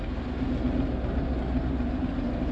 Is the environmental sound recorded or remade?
recorded